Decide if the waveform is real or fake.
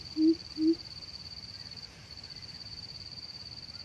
fake